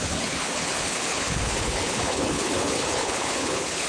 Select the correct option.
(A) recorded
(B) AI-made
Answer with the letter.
B